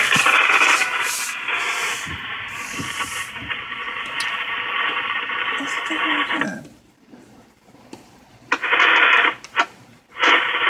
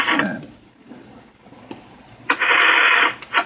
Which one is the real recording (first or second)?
second